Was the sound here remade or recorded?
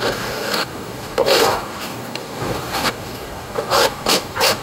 remade